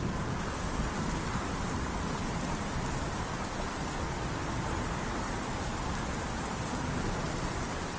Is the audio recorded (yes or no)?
yes